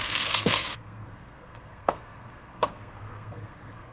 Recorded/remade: remade